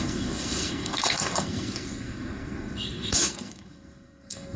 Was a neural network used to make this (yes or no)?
yes